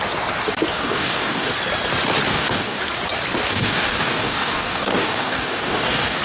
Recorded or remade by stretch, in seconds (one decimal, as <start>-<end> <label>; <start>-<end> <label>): 0.0-0.7 recorded; 0.7-1.5 remade; 1.5-2.3 recorded; 2.3-2.8 remade; 2.8-3.5 recorded; 3.5-6.2 remade